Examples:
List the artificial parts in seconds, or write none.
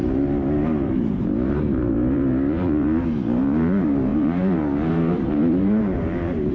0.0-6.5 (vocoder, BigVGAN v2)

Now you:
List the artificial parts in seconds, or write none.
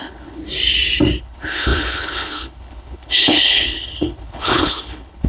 0.0-0.4 (codec, HILCodec); 1.2-5.3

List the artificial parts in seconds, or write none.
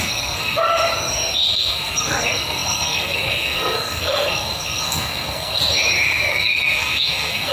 0.0-0.7 (codec, SNAC); 1.5-5.6; 6.3-7.5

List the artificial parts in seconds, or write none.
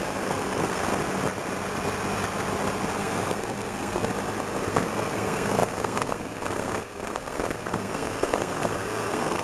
0.0-0.9 (codec, SNAC); 2.9-4.1; 4.7-9.4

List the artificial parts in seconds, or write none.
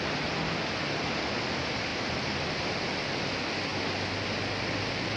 none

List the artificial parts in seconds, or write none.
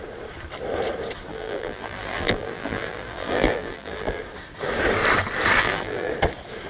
1.3-4.2 (vocoder, BigVGAN v2); 5.6-6.1